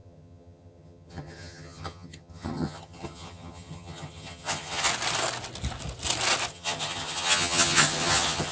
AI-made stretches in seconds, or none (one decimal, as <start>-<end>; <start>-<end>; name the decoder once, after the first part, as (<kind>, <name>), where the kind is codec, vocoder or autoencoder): 0.0-4.9 (vocoder, HiFi-GAN); 6.5-8.5

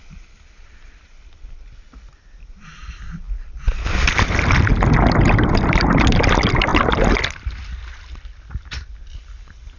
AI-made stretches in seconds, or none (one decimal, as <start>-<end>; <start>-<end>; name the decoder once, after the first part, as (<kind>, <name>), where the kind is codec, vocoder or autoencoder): none